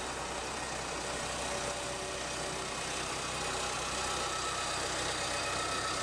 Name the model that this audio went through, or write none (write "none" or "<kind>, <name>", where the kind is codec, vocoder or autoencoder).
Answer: none